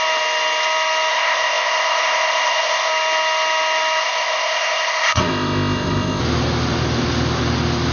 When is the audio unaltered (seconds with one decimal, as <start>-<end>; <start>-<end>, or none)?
0.0-1.1; 2.9-4.0; 6.2-7.9